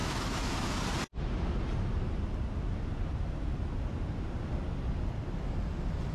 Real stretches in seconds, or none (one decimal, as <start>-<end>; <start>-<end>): 0.7-6.1